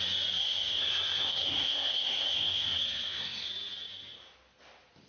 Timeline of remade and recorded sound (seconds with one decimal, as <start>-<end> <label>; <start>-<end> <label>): 0.0-0.4 recorded; 0.4-3.5 remade; 3.5-5.1 recorded